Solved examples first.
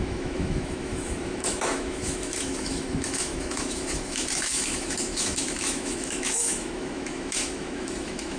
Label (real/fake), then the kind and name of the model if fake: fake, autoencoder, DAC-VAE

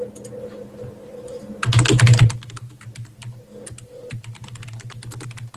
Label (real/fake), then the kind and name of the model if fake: real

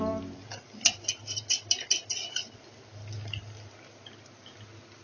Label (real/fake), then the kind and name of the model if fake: real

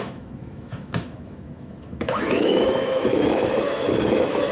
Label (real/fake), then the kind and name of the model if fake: fake, autoencoder, DAC-VAE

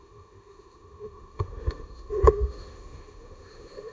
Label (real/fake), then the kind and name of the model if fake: fake, autoencoder, DAC-VAE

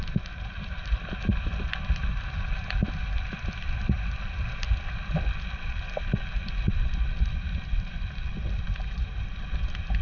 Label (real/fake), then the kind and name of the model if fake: real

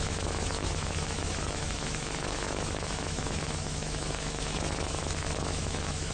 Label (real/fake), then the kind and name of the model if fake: fake, autoencoder, DAC-VAE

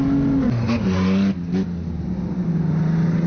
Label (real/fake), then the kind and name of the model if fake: real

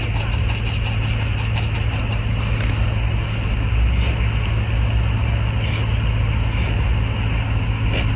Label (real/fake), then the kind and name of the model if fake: real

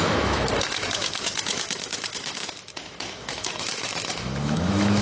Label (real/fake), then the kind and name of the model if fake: fake, autoencoder, DAC-VAE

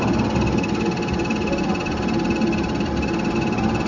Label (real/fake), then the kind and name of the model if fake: real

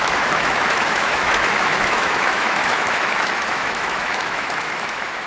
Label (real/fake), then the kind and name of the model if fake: fake, autoencoder, DAC-VAE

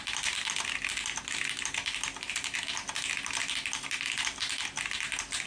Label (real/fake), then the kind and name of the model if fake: real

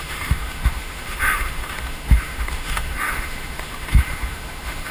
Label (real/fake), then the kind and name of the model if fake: fake, autoencoder, DAC-VAE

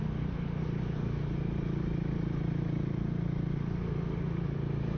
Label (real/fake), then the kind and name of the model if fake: real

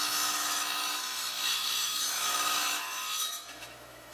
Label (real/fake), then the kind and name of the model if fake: fake, autoencoder, DAC-VAE